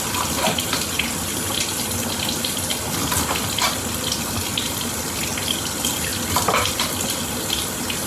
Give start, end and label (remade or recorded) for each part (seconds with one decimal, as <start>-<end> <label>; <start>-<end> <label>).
0.0-8.1 recorded